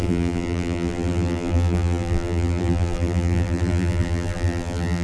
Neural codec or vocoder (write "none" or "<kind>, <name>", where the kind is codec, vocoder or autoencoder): vocoder, BigVGAN v2